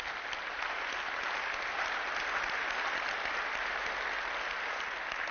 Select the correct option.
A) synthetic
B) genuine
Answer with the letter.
B